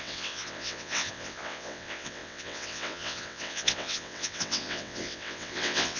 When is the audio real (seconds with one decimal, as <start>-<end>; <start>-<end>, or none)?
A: none